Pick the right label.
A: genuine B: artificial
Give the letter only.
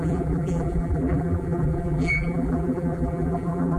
B